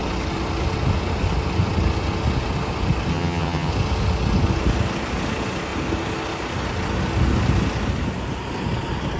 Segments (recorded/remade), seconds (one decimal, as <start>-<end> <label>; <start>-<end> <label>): 0.0-3.1 recorded; 3.1-3.7 remade; 3.7-9.2 recorded